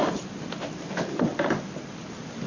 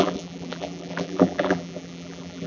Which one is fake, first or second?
second